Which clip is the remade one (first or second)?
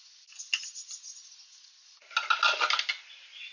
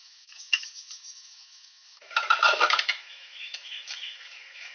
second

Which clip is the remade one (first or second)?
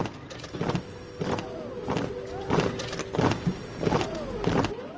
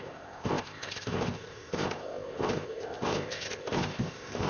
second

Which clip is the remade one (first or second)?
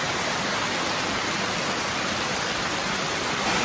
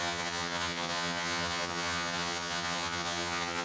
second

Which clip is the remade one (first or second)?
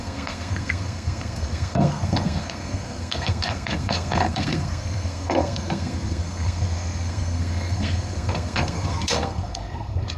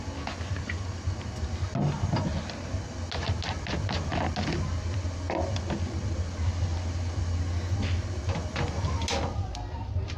first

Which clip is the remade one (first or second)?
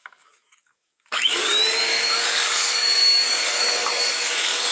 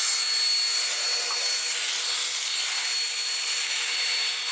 first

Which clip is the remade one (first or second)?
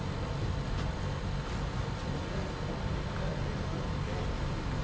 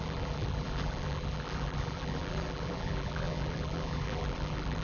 second